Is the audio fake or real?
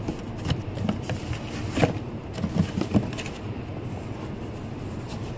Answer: real